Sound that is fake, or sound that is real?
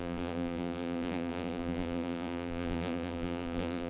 fake